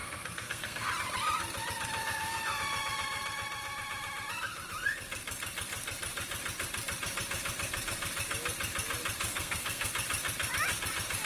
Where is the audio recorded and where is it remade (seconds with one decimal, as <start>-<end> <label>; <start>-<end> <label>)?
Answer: 0.0-0.9 remade; 0.9-2.0 recorded; 2.0-2.6 remade; 2.6-9.3 recorded; 9.3-9.9 remade; 9.9-11.3 recorded